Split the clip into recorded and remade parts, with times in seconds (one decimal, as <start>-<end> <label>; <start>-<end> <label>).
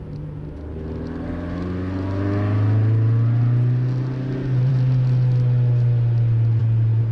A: 0.0-7.1 recorded